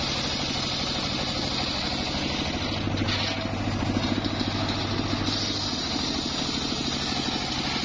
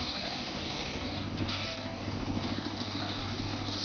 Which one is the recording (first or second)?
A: first